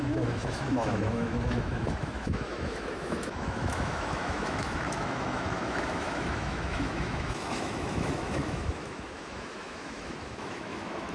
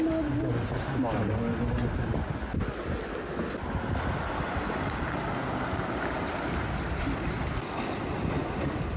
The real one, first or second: second